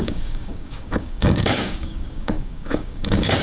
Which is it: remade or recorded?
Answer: remade